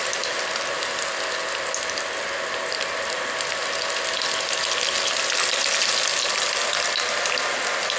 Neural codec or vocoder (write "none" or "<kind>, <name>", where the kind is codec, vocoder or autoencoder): none